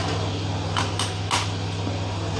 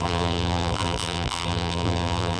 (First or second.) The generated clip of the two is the second